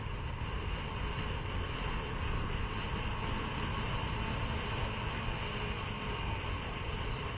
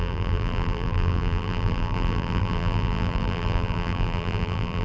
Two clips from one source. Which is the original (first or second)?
first